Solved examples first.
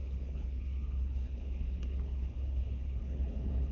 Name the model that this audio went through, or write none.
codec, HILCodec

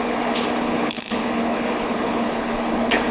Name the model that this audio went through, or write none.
codec, HILCodec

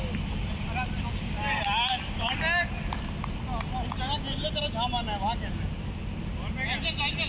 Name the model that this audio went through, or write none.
none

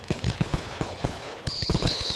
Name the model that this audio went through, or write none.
codec, HILCodec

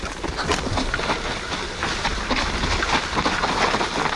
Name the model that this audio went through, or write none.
none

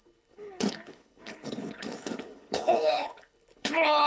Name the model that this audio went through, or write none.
codec, HILCodec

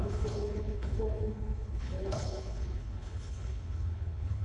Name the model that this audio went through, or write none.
codec, HILCodec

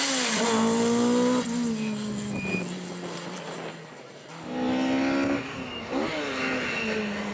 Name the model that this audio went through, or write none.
none